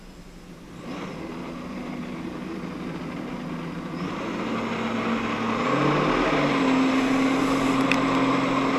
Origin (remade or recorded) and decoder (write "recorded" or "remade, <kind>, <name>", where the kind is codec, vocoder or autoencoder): recorded